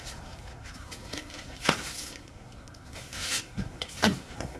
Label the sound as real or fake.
fake